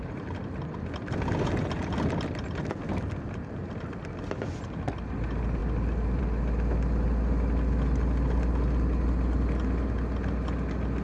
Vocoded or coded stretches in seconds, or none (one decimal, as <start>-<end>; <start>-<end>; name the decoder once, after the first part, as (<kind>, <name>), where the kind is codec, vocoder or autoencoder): none